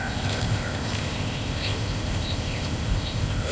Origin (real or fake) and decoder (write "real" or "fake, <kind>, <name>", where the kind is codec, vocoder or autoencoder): fake, codec, ZipCodec